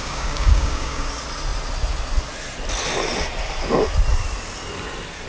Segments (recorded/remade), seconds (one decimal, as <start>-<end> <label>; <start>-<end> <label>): 0.0-1.1 remade; 1.1-5.3 recorded